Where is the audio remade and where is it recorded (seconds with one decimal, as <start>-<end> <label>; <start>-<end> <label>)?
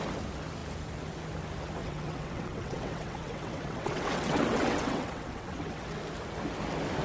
0.0-1.8 recorded; 1.8-6.0 remade; 6.0-7.0 recorded